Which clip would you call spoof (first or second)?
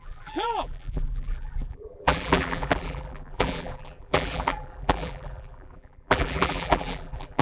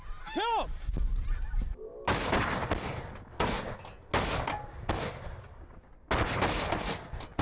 first